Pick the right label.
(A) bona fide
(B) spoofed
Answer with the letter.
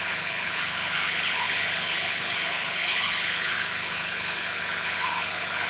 B